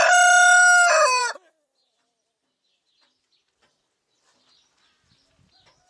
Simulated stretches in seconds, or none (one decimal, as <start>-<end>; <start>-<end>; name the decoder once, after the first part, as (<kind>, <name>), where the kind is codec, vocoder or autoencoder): none